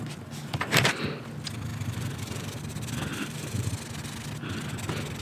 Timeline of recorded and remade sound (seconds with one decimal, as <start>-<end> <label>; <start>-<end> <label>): 0.0-1.7 recorded; 1.7-2.6 remade; 2.6-3.1 recorded; 3.1-3.7 remade; 3.7-5.2 recorded